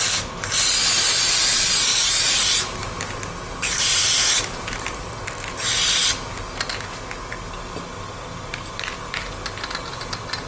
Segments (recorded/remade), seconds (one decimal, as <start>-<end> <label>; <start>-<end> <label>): 0.0-1.9 recorded; 1.9-5.1 remade; 5.1-10.5 recorded